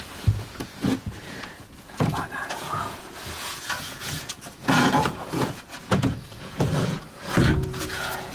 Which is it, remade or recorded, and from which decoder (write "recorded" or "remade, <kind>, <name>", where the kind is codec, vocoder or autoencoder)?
remade, vocoder, Vocos